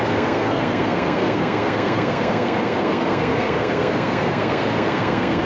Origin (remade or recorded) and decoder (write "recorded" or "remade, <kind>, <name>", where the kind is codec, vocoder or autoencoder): remade, codec, SNAC